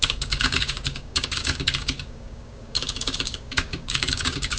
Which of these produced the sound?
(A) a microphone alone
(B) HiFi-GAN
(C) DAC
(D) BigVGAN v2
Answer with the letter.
C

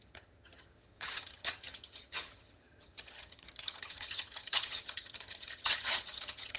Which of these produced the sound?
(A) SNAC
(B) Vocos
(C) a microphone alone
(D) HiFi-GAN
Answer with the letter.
D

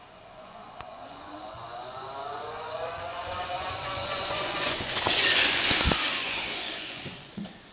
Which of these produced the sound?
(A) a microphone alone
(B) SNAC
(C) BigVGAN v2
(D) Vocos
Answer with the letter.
D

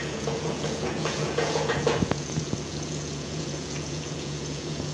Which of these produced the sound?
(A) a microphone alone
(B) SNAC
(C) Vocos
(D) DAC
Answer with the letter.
C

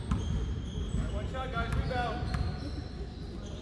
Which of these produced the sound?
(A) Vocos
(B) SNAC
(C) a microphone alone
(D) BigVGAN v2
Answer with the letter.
C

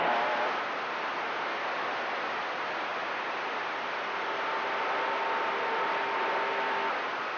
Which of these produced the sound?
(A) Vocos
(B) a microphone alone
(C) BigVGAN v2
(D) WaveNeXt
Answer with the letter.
B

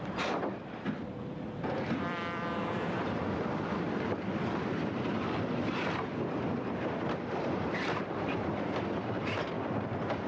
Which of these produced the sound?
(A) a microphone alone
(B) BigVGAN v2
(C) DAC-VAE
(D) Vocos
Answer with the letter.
B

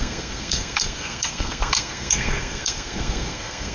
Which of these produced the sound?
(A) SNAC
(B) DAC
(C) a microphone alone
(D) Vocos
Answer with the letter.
A